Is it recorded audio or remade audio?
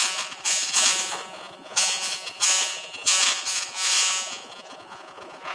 remade